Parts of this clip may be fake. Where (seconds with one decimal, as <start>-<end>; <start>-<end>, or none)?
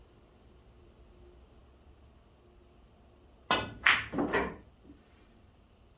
0.0-1.6; 4.1-6.0